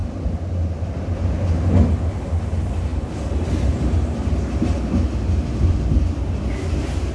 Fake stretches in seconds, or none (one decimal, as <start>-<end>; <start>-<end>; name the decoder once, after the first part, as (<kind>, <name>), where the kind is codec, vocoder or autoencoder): none